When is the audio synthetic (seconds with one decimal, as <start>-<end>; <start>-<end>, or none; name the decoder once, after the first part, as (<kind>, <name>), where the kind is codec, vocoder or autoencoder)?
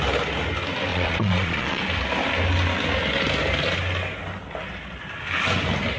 0.9-1.8 (vocoder, Vocos)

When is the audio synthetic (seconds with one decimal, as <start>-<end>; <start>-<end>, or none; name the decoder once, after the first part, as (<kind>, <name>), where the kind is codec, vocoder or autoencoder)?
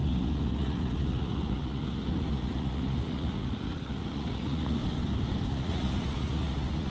0.0-4.8 (vocoder, Vocos); 5.5-6.9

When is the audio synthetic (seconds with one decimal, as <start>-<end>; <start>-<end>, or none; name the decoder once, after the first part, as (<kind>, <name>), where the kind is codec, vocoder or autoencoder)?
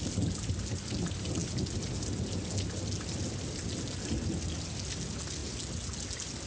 none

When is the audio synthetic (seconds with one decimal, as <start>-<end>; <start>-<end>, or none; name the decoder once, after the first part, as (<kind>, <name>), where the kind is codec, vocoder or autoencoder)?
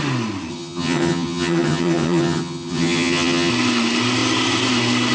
0.5-3.5 (vocoder, HiFi-GAN)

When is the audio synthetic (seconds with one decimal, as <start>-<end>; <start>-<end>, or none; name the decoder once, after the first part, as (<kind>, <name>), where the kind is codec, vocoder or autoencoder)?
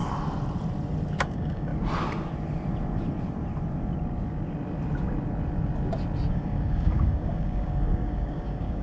1.2-1.7 (codec, DAC); 6.3-8.8